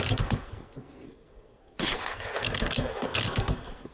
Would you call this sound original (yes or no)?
no